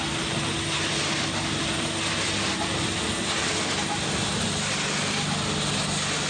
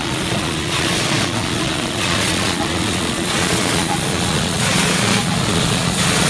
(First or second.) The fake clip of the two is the second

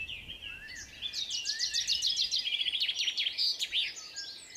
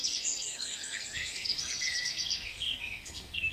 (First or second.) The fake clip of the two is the second